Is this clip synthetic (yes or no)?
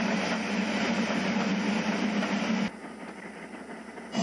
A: no